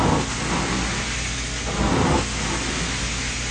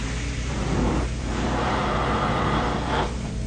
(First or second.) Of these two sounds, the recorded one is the first